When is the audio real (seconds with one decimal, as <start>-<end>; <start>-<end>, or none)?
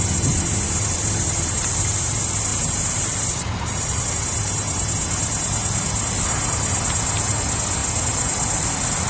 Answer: 0.0-2.5; 4.0-9.1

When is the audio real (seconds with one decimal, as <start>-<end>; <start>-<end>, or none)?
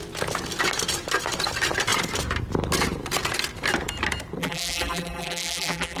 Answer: 0.0-4.4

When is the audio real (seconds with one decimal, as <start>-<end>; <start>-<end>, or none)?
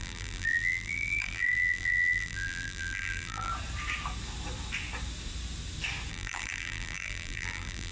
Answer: 3.5-6.1